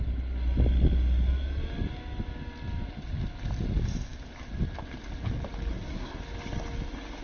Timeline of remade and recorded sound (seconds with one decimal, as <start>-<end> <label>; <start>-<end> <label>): 0.0-5.7 recorded; 5.7-6.2 remade; 6.2-7.2 recorded